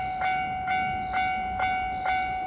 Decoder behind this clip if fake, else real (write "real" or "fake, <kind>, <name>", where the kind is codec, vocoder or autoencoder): real